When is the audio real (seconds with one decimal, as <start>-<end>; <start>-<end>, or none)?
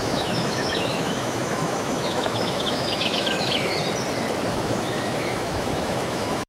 3.7-4.5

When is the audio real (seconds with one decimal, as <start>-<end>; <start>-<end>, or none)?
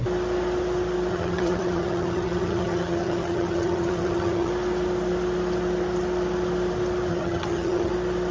0.0-1.1; 4.5-7.1; 7.9-8.3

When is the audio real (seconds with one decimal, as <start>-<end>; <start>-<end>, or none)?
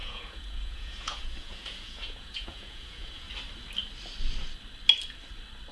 3.3-5.7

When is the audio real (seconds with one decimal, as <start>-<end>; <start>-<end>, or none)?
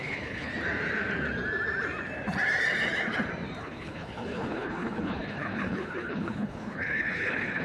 0.5-3.6